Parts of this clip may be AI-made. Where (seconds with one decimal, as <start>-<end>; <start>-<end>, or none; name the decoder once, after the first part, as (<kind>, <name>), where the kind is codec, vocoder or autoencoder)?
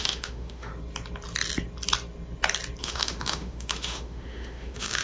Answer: 0.0-0.7 (autoencoder, DAC-VAE); 2.8-5.0